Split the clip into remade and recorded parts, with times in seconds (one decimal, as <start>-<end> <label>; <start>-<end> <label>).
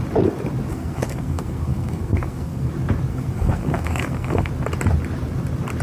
0.0-0.7 recorded; 0.7-2.7 remade; 2.7-3.1 recorded; 3.1-4.5 remade; 4.5-5.8 recorded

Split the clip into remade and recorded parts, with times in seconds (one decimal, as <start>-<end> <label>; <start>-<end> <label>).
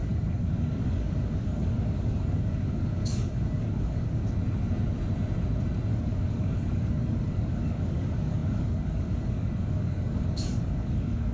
0.0-4.2 remade; 4.2-5.9 recorded; 5.9-11.3 remade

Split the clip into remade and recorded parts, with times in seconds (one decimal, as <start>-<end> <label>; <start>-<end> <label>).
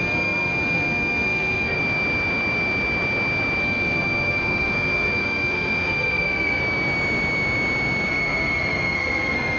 0.0-1.8 remade; 1.8-3.6 recorded; 3.6-6.6 remade; 6.6-8.1 recorded; 8.1-9.6 remade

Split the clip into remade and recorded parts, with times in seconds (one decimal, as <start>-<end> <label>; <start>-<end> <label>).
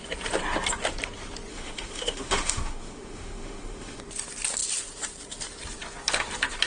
0.0-1.5 recorded; 1.5-4.0 remade; 4.0-6.7 recorded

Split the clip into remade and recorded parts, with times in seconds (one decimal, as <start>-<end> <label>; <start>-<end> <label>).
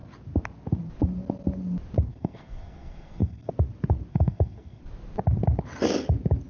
0.0-2.1 recorded; 2.1-3.5 remade; 3.5-4.1 recorded; 4.1-4.8 remade; 4.8-6.5 recorded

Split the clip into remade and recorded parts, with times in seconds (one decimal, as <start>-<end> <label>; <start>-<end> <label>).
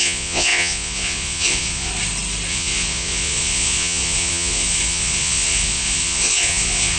0.0-1.9 remade; 1.9-2.5 recorded; 2.5-7.0 remade